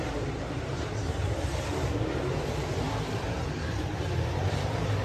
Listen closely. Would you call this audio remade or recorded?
remade